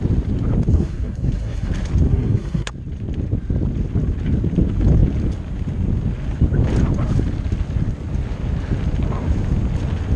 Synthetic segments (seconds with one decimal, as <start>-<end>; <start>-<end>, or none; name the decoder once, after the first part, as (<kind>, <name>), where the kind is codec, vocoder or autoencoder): 0.7-1.7 (codec, SNAC); 2.1-2.7